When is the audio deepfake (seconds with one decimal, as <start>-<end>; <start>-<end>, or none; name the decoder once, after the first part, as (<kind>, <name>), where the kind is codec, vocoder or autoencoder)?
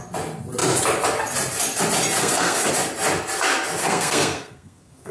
2.2-2.7 (codec, SNAC); 3.8-5.1